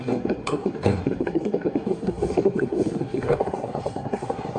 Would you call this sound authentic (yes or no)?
no